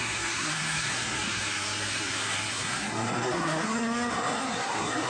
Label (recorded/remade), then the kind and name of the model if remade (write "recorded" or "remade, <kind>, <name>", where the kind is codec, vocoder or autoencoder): remade, codec, SNAC